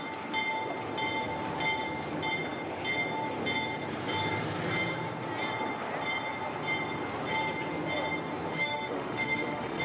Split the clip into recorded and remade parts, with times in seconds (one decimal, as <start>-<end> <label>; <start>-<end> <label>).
0.0-8.5 recorded; 8.5-9.8 remade